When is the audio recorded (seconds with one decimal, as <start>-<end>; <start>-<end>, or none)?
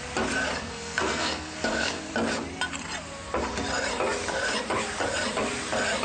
0.0-0.6; 2.1-6.0